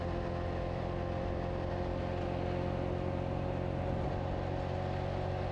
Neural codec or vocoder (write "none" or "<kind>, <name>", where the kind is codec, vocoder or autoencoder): none